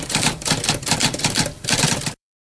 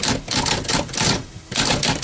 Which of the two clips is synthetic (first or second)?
first